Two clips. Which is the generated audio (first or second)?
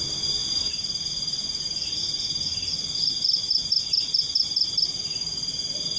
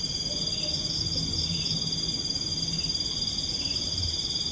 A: second